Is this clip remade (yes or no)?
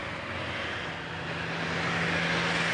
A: no